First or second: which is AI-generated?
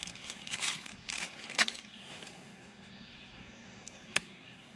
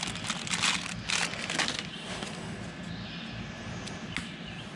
first